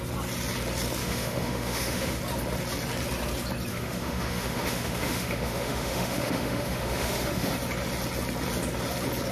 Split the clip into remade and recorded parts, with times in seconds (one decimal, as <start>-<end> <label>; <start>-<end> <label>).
0.0-1.0 recorded; 1.0-2.2 remade; 2.2-3.7 recorded; 3.7-7.5 remade; 7.5-9.3 recorded